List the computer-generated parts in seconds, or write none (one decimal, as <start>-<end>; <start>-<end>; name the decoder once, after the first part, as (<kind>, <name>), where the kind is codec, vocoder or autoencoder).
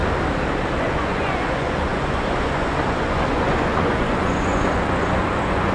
0.8-5.7 (vocoder, Vocos)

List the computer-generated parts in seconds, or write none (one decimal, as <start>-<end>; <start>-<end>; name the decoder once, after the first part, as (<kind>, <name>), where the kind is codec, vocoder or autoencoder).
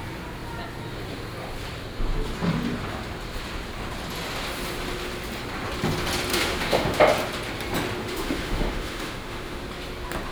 6.3-7.0 (autoencoder, DAC-VAE); 8.0-9.6